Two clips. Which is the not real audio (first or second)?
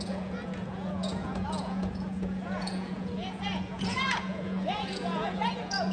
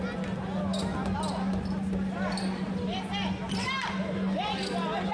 first